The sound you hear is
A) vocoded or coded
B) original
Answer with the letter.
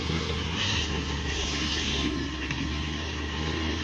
A